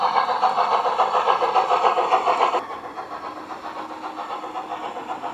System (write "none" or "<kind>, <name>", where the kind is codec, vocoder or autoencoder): none